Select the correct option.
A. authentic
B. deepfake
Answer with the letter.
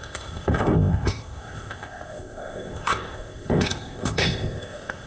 B